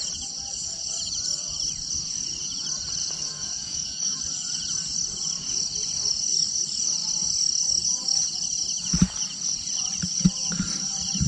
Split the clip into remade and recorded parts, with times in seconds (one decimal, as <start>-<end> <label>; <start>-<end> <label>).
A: 0.0-3.0 recorded; 3.0-4.2 remade; 4.2-11.3 recorded